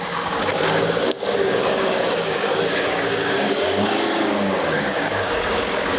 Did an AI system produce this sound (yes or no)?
yes